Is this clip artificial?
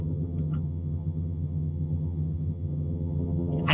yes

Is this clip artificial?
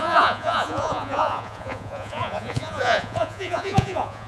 yes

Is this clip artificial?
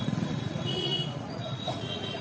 yes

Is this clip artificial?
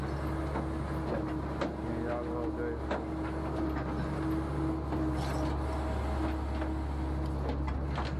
no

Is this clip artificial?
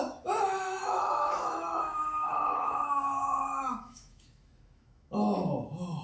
yes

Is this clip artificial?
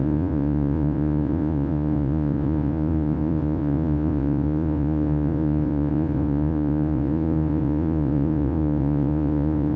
yes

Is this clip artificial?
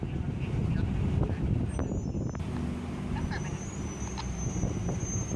no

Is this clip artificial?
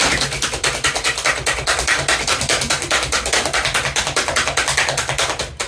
no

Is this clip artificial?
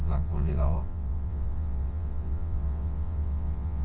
yes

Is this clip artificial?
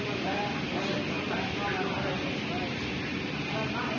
no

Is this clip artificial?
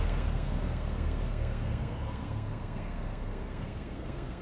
yes